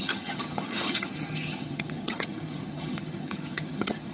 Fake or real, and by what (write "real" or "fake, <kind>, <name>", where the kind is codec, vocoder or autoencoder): fake, vocoder, HiFi-GAN